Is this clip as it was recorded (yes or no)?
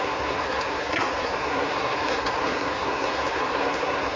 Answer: no